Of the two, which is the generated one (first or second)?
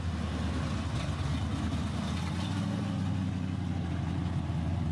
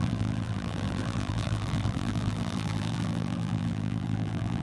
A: second